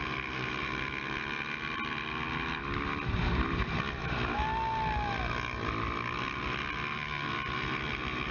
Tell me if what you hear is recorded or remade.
recorded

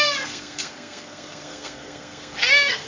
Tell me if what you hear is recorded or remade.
remade